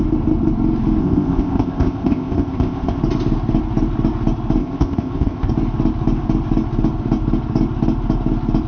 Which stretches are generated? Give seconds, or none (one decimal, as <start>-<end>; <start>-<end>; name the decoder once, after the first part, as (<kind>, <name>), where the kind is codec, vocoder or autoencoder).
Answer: 1.0-3.0 (codec, ZipCodec); 4.6-5.5